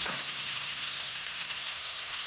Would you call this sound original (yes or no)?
no